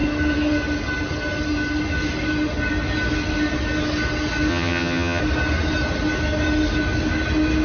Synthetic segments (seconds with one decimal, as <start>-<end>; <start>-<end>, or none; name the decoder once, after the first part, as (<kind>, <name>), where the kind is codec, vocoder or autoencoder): 4.5-5.2 (vocoder, HiFi-GAN)

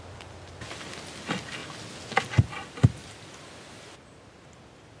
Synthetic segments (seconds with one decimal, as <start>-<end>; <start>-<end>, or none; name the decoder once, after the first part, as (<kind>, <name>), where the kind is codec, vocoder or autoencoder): none